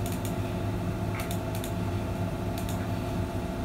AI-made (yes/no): no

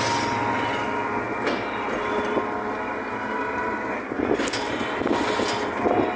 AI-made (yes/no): no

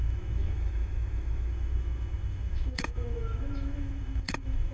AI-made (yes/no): yes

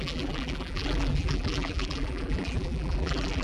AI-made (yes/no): yes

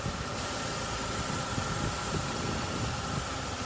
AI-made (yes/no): no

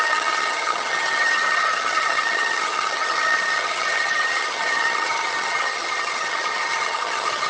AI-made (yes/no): yes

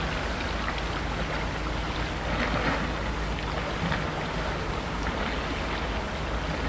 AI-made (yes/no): no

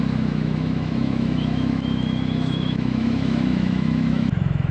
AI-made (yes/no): yes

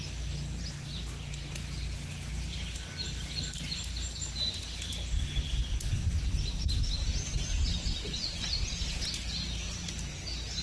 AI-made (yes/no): no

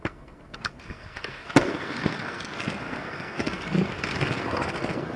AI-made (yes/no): yes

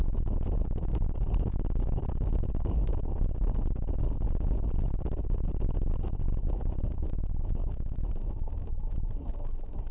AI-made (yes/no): no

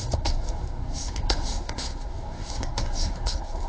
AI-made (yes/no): yes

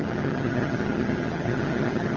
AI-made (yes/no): yes